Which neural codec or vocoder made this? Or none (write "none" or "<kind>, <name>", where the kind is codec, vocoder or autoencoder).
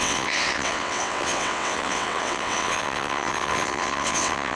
vocoder, WaveNeXt